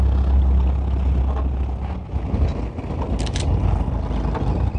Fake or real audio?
real